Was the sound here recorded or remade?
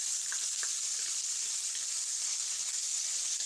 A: recorded